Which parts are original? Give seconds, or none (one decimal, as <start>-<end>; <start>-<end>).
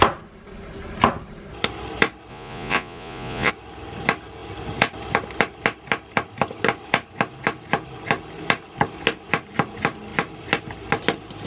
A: 0.0-2.3; 3.5-11.5